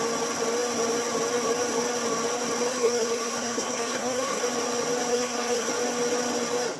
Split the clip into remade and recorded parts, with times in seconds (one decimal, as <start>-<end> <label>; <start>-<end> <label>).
0.0-2.7 recorded; 2.7-4.4 remade; 4.4-5.1 recorded; 5.1-5.7 remade; 5.7-6.8 recorded

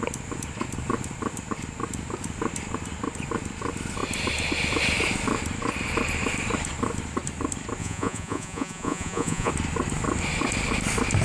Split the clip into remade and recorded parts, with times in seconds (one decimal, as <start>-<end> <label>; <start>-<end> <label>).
0.0-7.8 recorded; 7.8-9.5 remade; 9.5-11.2 recorded

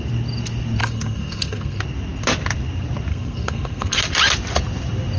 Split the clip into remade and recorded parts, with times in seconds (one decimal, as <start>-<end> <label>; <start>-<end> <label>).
0.0-0.8 recorded; 0.8-1.8 remade; 1.8-3.1 recorded; 3.1-4.0 remade; 4.0-5.2 recorded

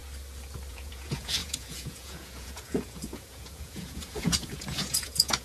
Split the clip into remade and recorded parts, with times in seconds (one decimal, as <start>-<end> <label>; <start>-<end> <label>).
0.0-0.7 recorded; 0.7-5.4 remade

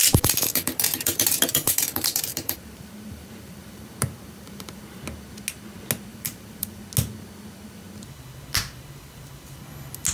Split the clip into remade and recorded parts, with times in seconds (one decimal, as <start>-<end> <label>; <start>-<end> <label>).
0.0-5.0 remade; 5.0-6.1 recorded; 6.1-6.8 remade; 6.8-10.1 recorded